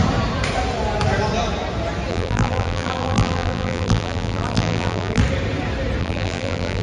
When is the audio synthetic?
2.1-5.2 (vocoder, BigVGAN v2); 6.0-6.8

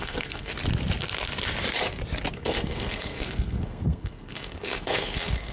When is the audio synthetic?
0.0-0.6 (codec, SNAC); 2.3-5.5

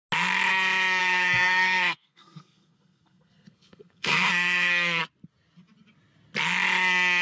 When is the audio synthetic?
1.0-5.0 (codec, SNAC)